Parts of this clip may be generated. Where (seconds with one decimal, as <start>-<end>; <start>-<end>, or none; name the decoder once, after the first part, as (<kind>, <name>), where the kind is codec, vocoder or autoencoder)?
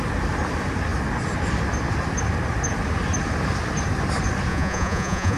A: 4.5-5.4 (vocoder, Vocos)